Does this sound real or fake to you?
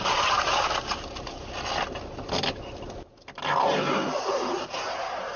real